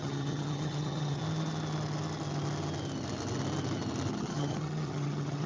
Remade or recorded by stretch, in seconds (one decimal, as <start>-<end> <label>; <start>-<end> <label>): 0.0-1.2 remade; 1.2-4.1 recorded; 4.1-5.5 remade

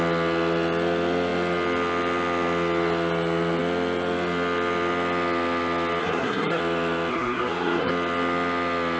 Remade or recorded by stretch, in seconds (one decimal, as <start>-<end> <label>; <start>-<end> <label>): 0.0-6.0 recorded; 6.0-6.6 remade; 6.6-7.1 recorded; 7.1-7.9 remade; 7.9-9.0 recorded